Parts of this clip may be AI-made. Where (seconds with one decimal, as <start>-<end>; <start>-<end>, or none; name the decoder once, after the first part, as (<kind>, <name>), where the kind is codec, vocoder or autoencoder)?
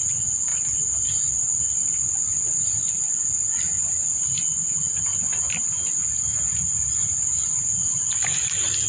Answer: none